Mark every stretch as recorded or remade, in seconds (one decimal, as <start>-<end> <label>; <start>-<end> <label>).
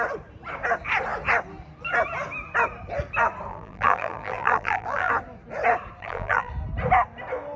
0.0-3.5 recorded; 3.5-5.1 remade; 5.1-6.0 recorded; 6.0-6.5 remade; 6.5-7.6 recorded